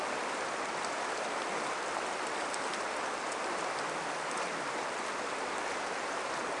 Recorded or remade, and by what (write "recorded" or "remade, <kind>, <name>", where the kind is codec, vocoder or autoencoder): recorded